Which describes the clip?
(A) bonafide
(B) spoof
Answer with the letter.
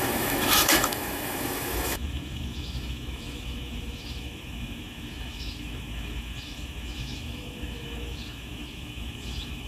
B